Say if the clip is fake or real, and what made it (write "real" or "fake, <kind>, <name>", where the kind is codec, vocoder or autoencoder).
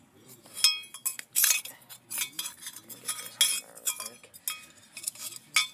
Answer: real